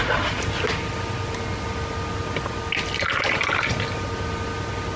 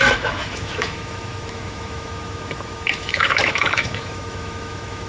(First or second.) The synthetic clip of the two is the second